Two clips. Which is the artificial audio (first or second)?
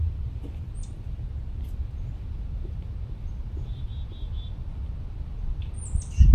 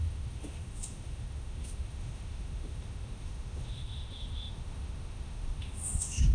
second